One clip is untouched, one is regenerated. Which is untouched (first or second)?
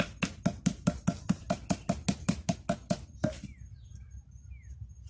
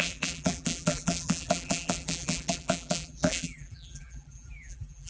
first